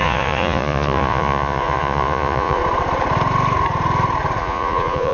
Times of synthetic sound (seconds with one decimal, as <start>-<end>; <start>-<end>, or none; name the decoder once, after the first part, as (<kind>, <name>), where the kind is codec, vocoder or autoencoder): 0.0-2.6 (vocoder, Vocos); 4.4-5.1